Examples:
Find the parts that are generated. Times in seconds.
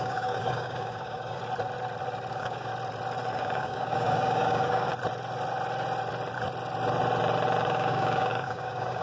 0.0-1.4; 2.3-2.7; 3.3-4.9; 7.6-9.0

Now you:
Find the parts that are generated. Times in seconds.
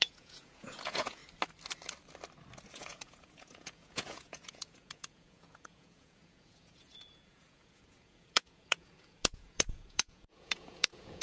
0.0-1.2; 2.7-11.2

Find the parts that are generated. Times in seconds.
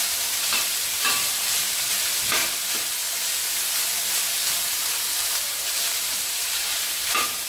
0.0-2.4; 4.7-7.5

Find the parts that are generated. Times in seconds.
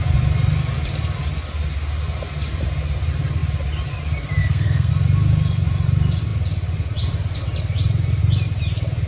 4.4-4.9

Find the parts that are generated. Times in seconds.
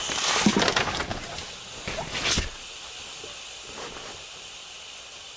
0.0-1.1; 4.3-5.4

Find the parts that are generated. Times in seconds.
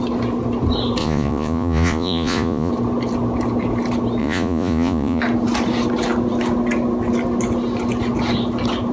1.0-2.7; 4.2-5.2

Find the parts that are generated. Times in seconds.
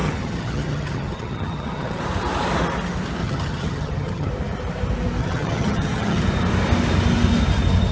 0.0-2.0; 3.2-4.3; 5.2-6.2